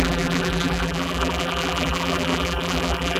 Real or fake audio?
fake